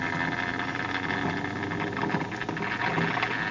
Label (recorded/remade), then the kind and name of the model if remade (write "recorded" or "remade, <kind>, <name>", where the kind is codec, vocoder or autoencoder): recorded